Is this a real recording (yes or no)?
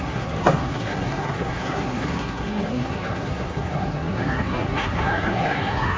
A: no